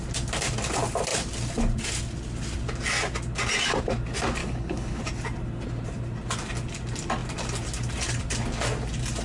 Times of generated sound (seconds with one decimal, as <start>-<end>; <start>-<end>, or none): 4.4-5.0